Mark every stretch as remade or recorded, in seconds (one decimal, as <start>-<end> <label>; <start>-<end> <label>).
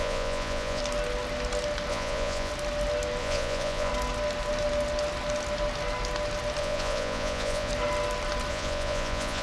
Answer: 0.0-0.8 remade; 0.8-1.9 recorded; 1.9-2.5 remade; 2.5-3.2 recorded; 3.2-3.9 remade; 3.9-6.6 recorded; 6.6-7.7 remade; 7.7-8.5 recorded; 8.5-9.4 remade